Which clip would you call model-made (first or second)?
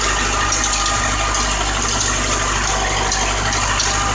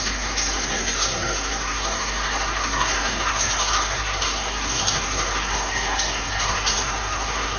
second